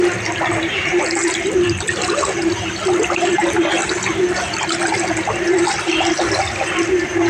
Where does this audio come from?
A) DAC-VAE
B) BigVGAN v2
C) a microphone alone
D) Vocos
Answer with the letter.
C